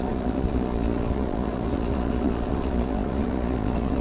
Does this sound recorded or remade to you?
remade